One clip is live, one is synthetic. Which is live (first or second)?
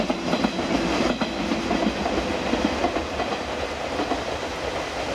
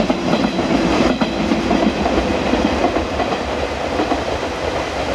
first